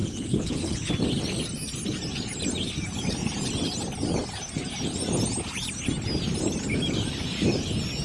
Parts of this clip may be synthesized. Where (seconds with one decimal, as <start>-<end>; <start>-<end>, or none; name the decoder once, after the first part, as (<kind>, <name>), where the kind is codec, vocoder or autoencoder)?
0.0-0.9 (codec, HILCodec)